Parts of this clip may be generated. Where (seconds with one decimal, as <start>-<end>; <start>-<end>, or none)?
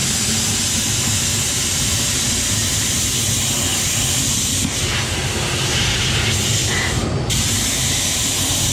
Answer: none